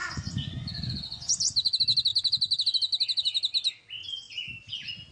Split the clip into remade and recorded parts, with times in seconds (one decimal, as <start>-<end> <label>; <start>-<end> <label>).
0.0-1.3 remade; 1.3-5.1 recorded

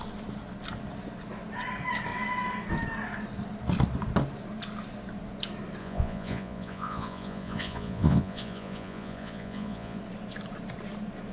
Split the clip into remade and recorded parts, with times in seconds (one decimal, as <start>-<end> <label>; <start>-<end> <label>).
0.0-5.8 recorded; 5.8-10.0 remade; 10.0-11.3 recorded

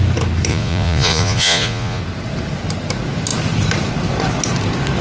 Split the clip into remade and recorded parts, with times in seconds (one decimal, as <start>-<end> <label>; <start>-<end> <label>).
0.0-0.5 recorded; 0.5-2.0 remade; 2.0-5.0 recorded

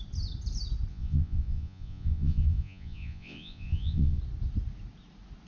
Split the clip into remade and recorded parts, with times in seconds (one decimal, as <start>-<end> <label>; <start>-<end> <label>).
0.0-0.9 recorded; 0.9-4.2 remade; 4.2-5.5 recorded

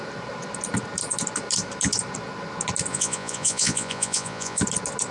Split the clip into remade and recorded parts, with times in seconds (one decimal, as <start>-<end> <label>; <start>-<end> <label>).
0.0-2.9 recorded; 2.9-4.6 remade; 4.6-5.1 recorded

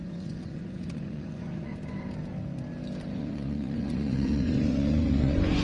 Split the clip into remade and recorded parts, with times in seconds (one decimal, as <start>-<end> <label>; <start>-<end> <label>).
0.0-1.7 remade; 1.7-3.1 recorded; 3.1-5.6 remade

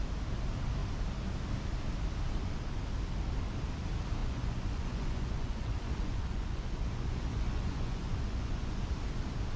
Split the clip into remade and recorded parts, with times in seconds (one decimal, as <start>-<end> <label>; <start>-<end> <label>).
0.0-4.2 recorded; 4.2-8.8 remade; 8.8-9.6 recorded

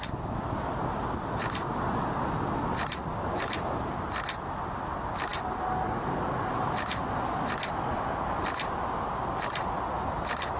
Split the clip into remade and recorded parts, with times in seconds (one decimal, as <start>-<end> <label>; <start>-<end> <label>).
0.0-10.6 recorded